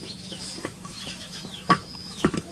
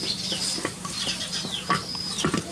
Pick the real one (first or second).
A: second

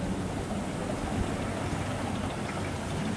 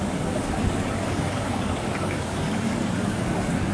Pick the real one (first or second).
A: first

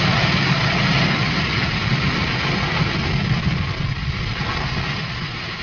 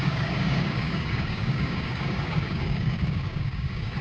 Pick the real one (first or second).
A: first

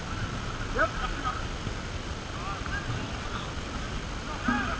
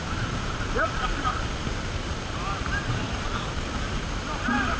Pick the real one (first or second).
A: first